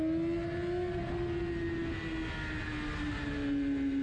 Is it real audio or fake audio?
real